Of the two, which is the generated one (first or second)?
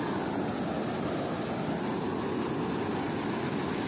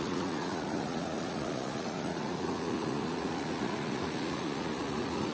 second